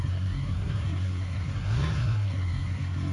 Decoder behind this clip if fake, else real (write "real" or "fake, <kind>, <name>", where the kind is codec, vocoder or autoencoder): fake, codec, SNAC